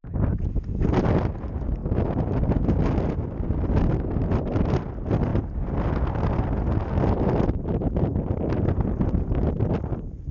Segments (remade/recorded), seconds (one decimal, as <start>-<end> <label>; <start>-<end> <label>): 0.0-10.3 recorded